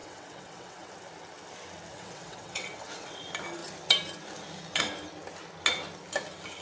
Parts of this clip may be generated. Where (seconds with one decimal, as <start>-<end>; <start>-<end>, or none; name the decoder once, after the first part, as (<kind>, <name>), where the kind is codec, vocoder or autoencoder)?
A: 0.0-0.9 (vocoder, WaveNeXt); 1.9-3.2